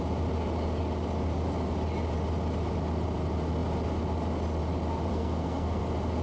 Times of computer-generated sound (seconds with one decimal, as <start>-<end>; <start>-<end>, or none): 5.1-5.8